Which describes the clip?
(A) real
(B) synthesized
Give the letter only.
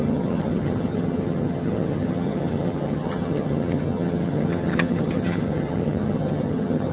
B